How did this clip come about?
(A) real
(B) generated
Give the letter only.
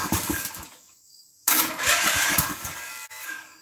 B